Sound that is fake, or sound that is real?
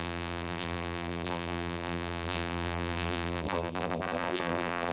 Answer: fake